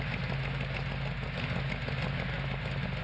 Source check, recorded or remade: recorded